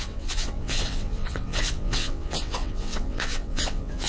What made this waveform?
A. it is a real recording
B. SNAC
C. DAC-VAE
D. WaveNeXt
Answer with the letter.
D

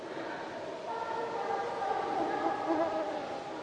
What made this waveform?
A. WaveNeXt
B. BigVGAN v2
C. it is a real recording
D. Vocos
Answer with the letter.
C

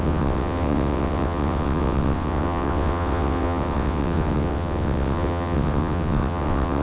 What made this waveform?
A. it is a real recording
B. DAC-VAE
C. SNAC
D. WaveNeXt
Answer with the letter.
D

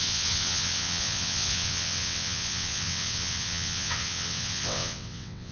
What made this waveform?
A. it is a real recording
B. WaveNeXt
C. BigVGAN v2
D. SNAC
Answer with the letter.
B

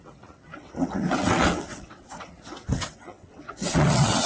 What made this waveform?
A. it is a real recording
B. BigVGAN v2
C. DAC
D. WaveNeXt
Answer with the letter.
D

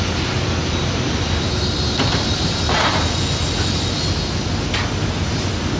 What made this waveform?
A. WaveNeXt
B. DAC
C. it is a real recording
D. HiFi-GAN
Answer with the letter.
C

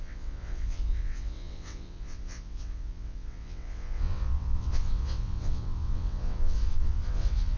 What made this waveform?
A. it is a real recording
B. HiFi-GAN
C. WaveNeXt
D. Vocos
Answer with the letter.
C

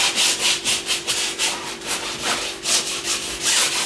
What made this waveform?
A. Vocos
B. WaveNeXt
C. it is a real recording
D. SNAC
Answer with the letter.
C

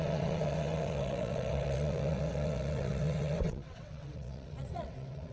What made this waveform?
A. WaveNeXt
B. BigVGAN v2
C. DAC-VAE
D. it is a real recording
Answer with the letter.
A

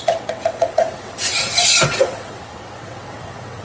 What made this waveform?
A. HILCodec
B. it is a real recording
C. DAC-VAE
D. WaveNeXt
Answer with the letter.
D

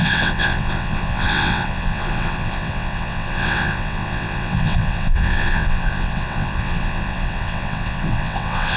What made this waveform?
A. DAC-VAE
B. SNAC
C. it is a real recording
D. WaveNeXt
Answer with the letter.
D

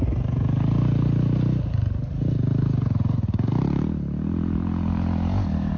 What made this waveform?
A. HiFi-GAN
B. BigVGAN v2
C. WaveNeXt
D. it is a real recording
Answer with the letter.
D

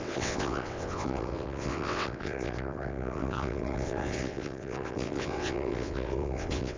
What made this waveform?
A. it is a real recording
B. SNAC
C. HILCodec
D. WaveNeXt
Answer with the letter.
D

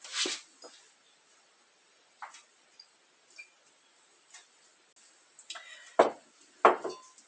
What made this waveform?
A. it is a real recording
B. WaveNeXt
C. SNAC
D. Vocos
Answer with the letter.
A